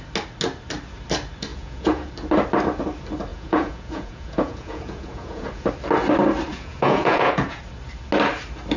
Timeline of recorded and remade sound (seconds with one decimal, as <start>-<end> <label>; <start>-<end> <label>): 0.0-1.5 recorded; 1.5-2.1 remade; 2.1-3.3 recorded; 3.3-5.7 remade; 5.7-6.5 recorded; 6.5-7.6 remade; 7.6-8.8 recorded